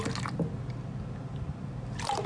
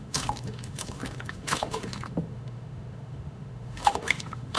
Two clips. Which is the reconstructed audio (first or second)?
second